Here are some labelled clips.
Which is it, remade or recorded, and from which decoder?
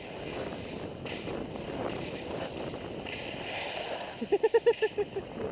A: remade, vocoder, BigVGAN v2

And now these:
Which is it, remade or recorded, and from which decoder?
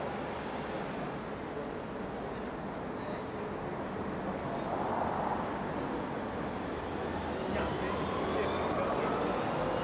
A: recorded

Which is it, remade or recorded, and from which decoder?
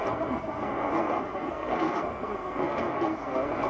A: remade, codec, SNAC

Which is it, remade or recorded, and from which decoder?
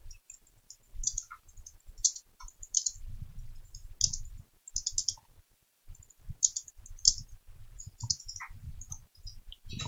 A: recorded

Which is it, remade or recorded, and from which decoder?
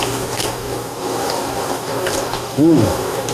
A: remade, codec, DAC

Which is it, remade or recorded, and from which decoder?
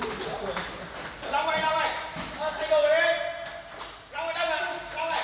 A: recorded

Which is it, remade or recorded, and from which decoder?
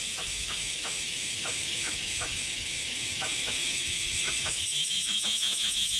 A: remade, autoencoder, DAC-VAE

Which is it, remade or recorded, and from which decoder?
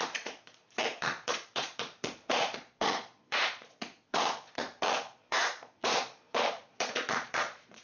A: remade, vocoder, Vocos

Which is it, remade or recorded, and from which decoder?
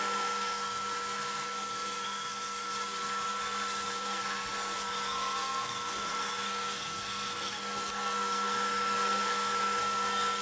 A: remade, codec, SNAC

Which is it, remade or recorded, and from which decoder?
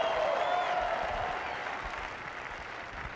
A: recorded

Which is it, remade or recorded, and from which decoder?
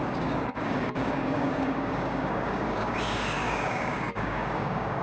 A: remade, codec, DAC